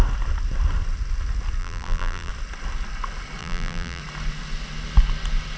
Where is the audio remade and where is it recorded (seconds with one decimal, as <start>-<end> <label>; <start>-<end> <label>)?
0.0-1.6 recorded; 1.6-2.3 remade; 2.3-3.4 recorded; 3.4-4.0 remade; 4.0-5.6 recorded